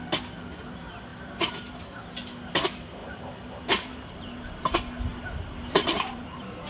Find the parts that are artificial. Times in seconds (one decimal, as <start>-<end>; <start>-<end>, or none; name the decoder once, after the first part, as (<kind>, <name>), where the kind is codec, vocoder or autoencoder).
1.1-1.9 (vocoder, BigVGAN v2); 3.0-4.6; 5.1-6.7